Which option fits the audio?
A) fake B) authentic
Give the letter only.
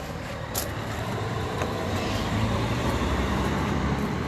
A